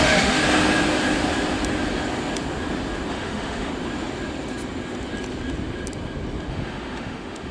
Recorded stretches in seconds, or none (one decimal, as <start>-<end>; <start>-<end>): 0.4-3.1; 3.7-6.5

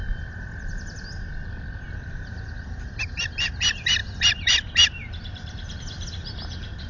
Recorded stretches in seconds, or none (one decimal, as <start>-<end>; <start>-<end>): 0.0-6.9

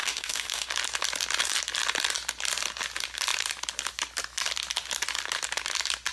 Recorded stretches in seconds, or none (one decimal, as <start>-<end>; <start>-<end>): 0.7-6.1

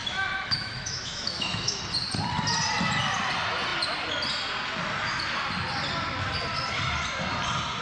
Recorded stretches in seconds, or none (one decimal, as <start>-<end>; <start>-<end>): 1.8-7.8